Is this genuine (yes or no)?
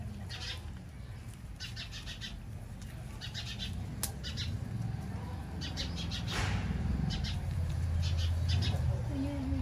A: yes